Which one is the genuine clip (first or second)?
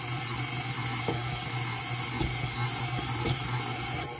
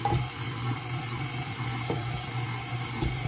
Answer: first